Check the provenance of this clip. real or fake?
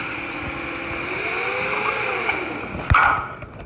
real